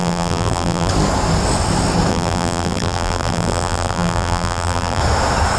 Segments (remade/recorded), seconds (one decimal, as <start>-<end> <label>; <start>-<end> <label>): 0.0-0.9 remade; 0.9-2.1 recorded; 2.1-5.0 remade; 5.0-5.6 recorded